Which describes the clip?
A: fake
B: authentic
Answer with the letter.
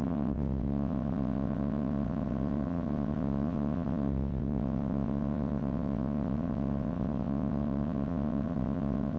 A